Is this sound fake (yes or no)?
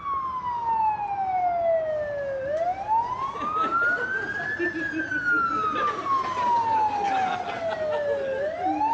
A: no